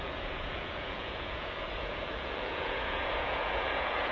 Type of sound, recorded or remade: remade